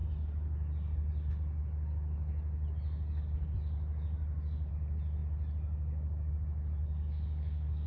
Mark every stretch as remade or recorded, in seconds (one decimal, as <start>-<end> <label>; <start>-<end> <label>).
0.0-6.8 recorded; 6.8-7.9 remade